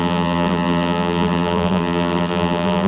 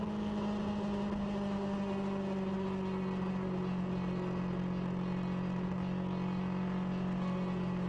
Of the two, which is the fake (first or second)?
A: first